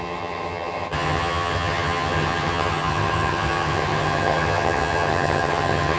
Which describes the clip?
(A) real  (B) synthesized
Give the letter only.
B